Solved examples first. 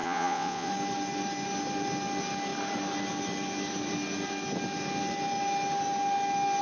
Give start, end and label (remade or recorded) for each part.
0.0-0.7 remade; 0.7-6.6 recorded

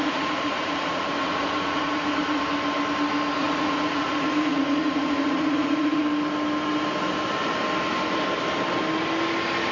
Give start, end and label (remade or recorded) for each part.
0.0-2.4 remade; 2.4-3.4 recorded; 3.4-6.0 remade; 6.0-9.7 recorded

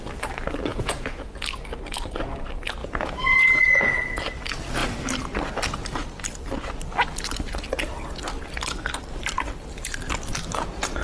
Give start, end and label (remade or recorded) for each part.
0.0-0.7 recorded; 0.7-1.3 remade; 1.3-2.8 recorded; 2.8-4.2 remade; 4.2-11.0 recorded

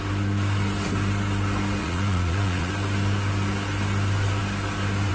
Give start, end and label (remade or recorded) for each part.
0.0-1.8 recorded; 1.8-2.7 remade; 2.7-5.1 recorded